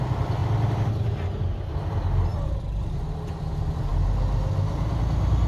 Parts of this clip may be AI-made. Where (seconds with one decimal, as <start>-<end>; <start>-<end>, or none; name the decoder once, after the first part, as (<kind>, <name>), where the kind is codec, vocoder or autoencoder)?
none